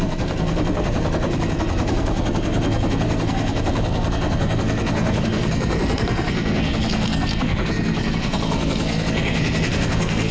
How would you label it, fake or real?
fake